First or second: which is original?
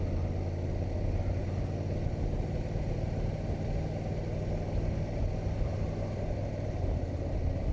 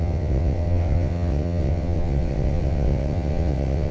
first